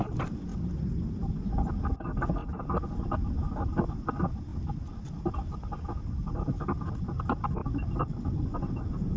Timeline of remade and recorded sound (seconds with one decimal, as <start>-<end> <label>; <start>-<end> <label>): 0.0-0.5 recorded; 0.5-1.4 remade; 1.4-4.5 recorded; 4.5-6.9 remade; 6.9-7.6 recorded; 7.6-8.7 remade; 8.7-9.2 recorded